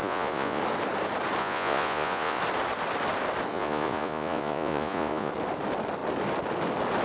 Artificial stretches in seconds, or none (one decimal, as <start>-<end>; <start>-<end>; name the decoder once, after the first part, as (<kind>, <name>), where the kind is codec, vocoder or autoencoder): 0.0-0.6 (vocoder, Vocos); 1.4-2.4; 3.5-5.3